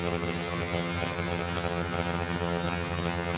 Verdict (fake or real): fake